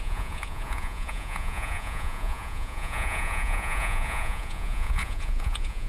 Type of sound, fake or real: fake